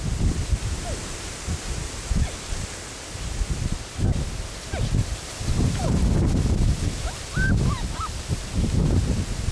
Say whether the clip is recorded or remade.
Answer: recorded